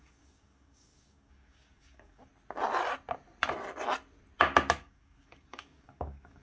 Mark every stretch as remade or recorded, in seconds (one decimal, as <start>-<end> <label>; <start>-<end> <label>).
0.0-2.3 remade; 2.3-4.8 recorded; 4.8-6.4 remade